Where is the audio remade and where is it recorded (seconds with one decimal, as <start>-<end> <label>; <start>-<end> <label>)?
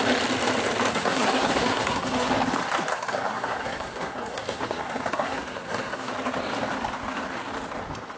0.0-0.9 recorded; 0.9-2.3 remade; 2.3-2.9 recorded; 2.9-6.1 remade; 6.1-8.2 recorded